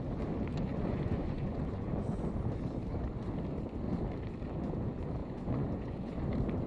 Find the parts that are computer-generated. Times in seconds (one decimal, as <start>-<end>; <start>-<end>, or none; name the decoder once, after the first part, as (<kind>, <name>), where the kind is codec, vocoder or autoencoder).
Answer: 0.7-1.9 (vocoder, Vocos); 5.2-6.3